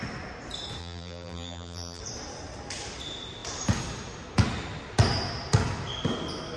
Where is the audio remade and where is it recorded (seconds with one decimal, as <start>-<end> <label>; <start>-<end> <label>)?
0.0-0.8 recorded; 0.8-2.0 remade; 2.0-6.6 recorded

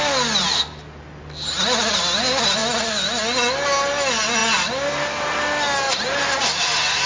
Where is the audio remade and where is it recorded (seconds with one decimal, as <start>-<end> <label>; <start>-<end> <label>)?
0.0-7.1 recorded

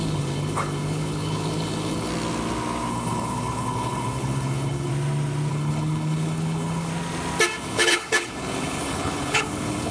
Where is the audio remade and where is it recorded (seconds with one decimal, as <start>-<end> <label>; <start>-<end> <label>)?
0.0-2.1 remade; 2.1-2.9 recorded; 2.9-4.9 remade; 4.9-5.5 recorded; 5.5-6.9 remade; 6.9-7.6 recorded; 7.6-9.9 remade

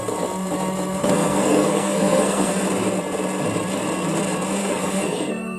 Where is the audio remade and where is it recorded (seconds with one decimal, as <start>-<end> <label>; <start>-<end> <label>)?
0.0-1.0 recorded; 1.0-2.5 remade; 2.5-4.6 recorded; 4.6-5.6 remade

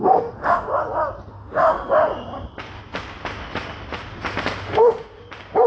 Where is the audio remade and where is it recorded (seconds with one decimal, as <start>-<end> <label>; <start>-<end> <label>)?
0.0-0.7 remade; 0.7-1.3 recorded; 1.3-2.1 remade; 2.1-4.6 recorded; 4.6-5.2 remade; 5.2-5.7 recorded

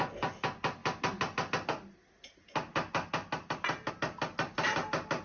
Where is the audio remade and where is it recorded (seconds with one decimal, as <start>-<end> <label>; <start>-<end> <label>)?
0.0-5.2 recorded

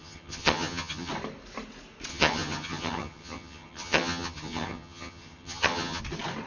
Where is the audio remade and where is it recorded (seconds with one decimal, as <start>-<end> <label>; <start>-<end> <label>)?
0.0-1.1 remade; 1.1-2.1 recorded; 2.1-6.0 remade; 6.0-6.5 recorded

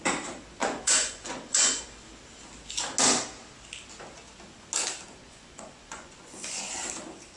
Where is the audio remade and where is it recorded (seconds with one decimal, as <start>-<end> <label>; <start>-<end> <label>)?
0.0-0.6 recorded; 0.6-1.8 remade; 1.8-5.2 recorded; 5.2-6.8 remade; 6.8-7.4 recorded